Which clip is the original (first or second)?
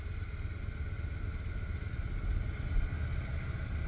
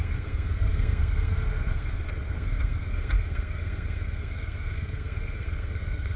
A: first